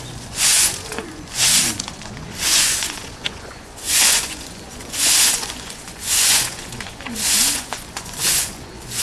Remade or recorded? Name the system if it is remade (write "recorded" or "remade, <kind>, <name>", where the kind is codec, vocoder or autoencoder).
remade, vocoder, Vocos